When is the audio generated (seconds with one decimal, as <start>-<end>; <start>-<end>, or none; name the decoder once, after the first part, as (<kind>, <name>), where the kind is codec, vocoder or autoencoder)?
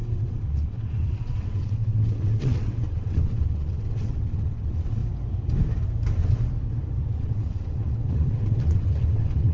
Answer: 0.0-5.0 (vocoder, WaveNeXt); 7.0-9.5